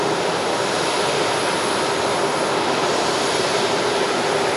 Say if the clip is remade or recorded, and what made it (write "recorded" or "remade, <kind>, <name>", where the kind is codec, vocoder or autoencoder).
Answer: recorded